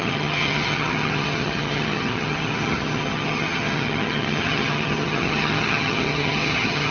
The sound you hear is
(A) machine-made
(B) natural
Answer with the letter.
A